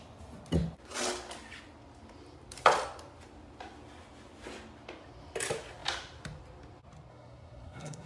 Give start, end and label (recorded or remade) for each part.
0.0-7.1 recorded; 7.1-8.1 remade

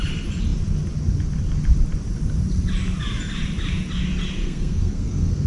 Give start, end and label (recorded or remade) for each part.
0.0-4.4 recorded; 4.4-5.5 remade

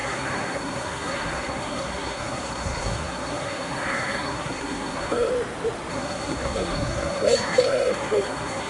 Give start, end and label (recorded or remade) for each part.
0.0-5.3 remade; 5.3-5.9 recorded; 5.9-8.7 remade